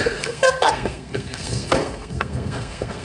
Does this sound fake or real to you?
fake